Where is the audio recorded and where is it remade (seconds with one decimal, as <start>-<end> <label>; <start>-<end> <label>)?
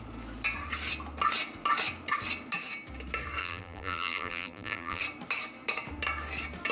0.0-3.4 recorded; 3.4-5.0 remade; 5.0-6.7 recorded